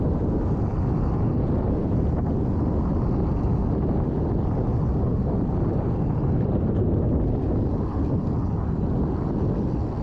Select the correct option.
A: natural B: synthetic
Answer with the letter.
A